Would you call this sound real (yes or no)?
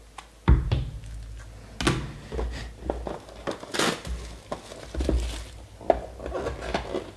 yes